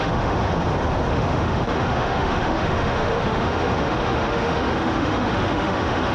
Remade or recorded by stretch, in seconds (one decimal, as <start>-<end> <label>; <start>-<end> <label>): 0.0-0.5 remade; 0.5-1.1 recorded; 1.1-6.1 remade